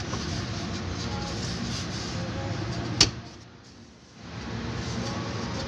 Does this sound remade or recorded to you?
recorded